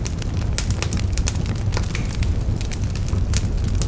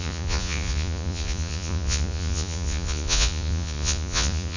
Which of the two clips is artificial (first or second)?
second